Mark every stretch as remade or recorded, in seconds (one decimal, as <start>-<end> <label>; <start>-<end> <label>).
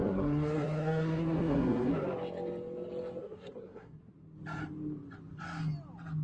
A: 0.0-1.9 remade; 1.9-3.2 recorded; 3.2-4.0 remade; 4.0-6.2 recorded